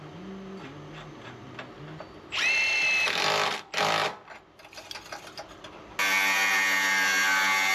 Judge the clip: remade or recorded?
recorded